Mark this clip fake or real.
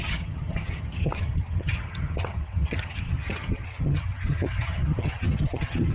fake